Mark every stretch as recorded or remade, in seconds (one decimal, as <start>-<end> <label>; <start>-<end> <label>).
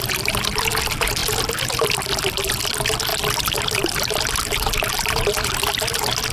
0.0-3.1 recorded; 3.1-4.3 remade; 4.3-6.3 recorded